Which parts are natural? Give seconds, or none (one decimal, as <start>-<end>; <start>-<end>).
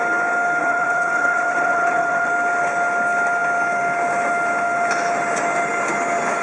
0.0-0.6; 2.3-6.4